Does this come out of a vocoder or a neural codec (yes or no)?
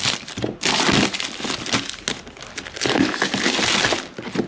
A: no